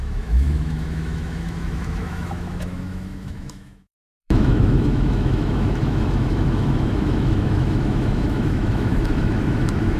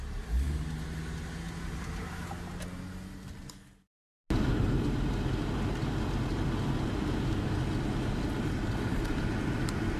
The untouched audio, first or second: second